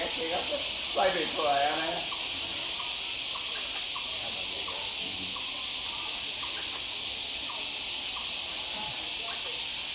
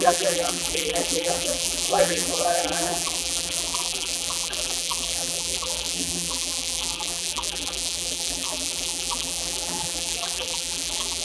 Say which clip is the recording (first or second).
first